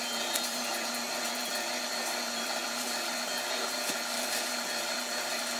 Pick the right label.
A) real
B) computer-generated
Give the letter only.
B